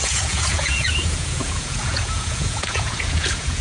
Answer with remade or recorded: remade